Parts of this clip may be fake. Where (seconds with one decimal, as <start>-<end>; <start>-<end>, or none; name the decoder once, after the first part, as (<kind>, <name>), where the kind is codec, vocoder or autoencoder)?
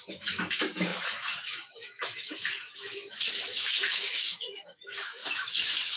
0.0-6.0 (autoencoder, DAC-VAE)